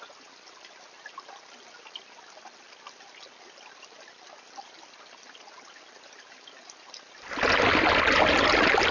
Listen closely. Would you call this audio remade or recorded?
recorded